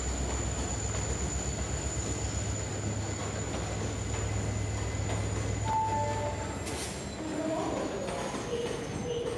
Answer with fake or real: real